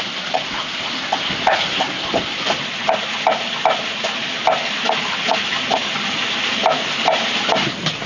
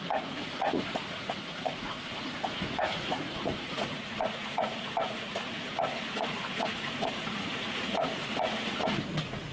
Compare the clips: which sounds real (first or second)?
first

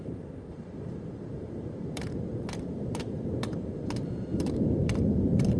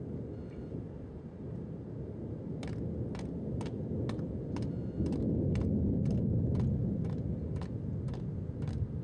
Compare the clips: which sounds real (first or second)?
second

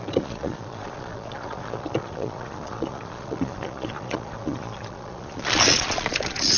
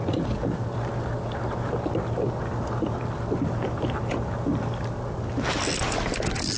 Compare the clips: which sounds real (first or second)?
second